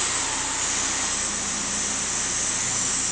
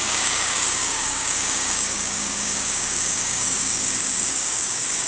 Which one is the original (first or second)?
first